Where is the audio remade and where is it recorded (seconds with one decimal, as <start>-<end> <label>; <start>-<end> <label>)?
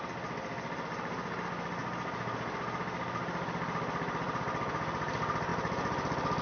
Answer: 0.0-6.4 recorded